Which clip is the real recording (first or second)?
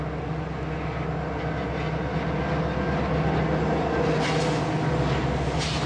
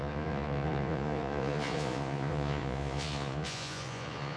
first